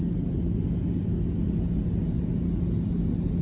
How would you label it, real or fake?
real